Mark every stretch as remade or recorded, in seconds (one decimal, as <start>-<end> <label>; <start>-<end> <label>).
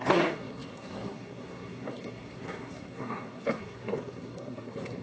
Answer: 0.0-5.0 remade